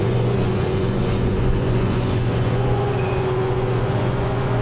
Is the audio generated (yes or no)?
yes